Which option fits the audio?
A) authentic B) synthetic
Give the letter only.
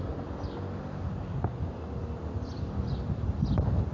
A